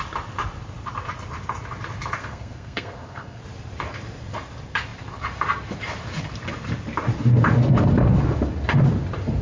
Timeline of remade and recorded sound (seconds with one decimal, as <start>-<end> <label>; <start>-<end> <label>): 0.0-2.2 recorded; 2.2-3.4 remade; 3.4-9.4 recorded